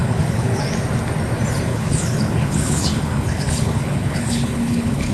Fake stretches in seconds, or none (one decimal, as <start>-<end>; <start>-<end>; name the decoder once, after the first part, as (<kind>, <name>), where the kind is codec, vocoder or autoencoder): 0.0-0.6 (codec, HILCodec); 1.7-5.1